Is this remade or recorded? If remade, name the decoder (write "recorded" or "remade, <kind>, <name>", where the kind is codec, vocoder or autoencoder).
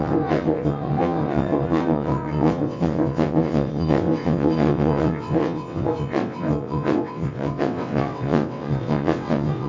remade, vocoder, WaveNeXt